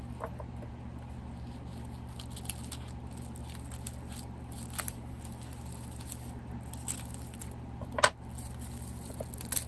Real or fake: real